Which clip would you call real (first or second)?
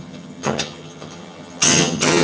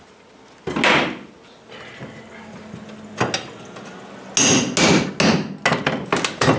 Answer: second